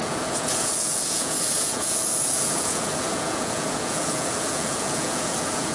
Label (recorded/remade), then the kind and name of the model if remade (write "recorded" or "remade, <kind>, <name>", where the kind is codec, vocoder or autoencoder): remade, vocoder, Vocos